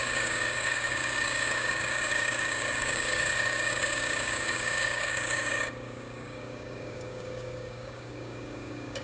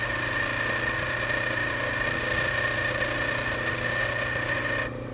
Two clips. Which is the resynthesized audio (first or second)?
first